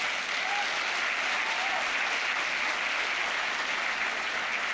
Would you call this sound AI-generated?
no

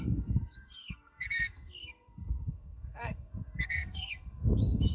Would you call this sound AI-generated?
yes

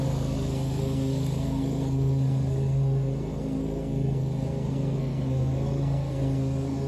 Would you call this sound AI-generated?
yes